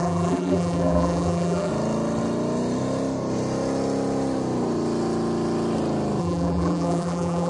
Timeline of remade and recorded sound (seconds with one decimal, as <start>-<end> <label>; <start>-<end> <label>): 0.0-1.7 remade; 1.7-6.2 recorded; 6.2-7.5 remade